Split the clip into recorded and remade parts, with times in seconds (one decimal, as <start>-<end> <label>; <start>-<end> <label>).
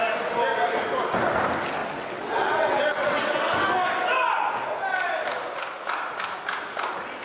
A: 0.0-1.8 recorded; 1.8-3.5 remade; 3.5-7.2 recorded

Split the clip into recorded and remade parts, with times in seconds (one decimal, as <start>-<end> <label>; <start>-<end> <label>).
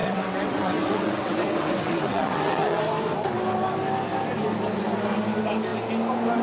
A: 0.0-2.8 remade; 2.8-6.4 recorded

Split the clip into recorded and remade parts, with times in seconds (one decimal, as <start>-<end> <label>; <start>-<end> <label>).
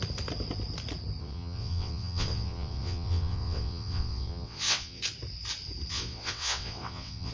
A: 0.0-1.2 recorded; 1.2-5.0 remade; 5.0-5.9 recorded; 5.9-7.3 remade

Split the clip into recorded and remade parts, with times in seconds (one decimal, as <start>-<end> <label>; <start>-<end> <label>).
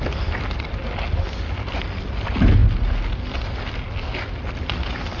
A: 0.0-5.2 recorded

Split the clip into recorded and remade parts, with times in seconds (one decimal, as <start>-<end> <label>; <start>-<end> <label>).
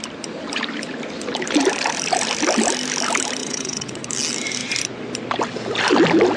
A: 0.0-3.4 recorded; 3.4-4.0 remade; 4.0-6.4 recorded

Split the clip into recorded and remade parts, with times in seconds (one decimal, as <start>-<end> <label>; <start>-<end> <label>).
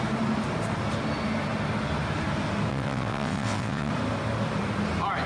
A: 0.0-2.7 recorded; 2.7-3.9 remade; 3.9-5.3 recorded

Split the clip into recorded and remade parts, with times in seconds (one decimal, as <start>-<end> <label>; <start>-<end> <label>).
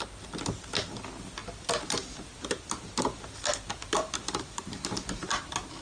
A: 0.0-5.8 recorded